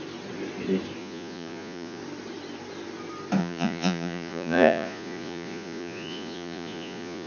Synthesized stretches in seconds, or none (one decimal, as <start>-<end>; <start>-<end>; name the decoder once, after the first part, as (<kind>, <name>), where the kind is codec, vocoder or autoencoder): 1.0-2.0 (vocoder, Vocos); 3.4-7.3